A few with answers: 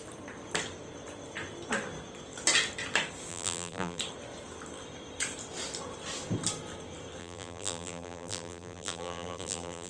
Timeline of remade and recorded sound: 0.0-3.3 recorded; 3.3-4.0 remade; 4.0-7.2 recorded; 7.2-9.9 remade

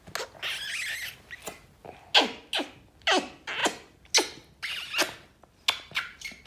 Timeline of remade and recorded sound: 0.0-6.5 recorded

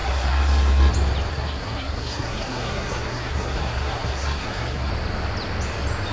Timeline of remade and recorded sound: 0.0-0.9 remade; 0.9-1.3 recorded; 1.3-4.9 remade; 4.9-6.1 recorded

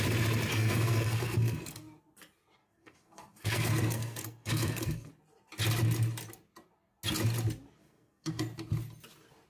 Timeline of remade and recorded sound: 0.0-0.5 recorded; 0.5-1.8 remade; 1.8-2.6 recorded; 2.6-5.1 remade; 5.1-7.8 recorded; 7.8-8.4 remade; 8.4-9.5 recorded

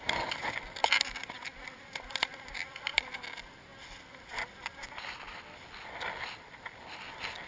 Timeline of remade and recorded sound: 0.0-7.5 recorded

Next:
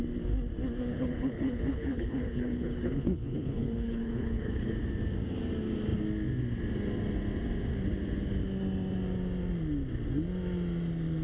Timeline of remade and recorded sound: 0.0-0.9 recorded; 0.9-4.7 remade; 4.7-11.2 recorded

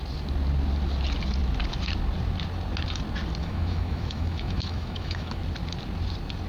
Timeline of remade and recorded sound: 0.0-3.4 recorded; 3.4-5.4 remade; 5.4-6.5 recorded

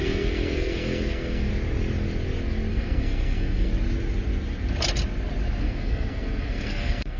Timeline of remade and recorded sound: 0.0-1.5 remade; 1.5-2.7 recorded; 2.7-3.7 remade; 3.7-5.6 recorded; 5.6-7.2 remade